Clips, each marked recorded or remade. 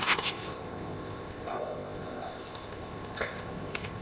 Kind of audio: remade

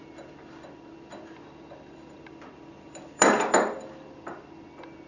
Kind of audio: recorded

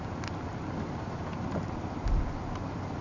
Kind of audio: recorded